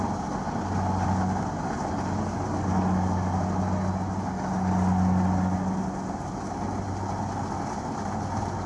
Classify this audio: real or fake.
real